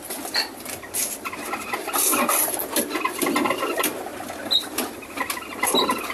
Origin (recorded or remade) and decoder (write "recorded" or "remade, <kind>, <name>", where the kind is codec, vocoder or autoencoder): recorded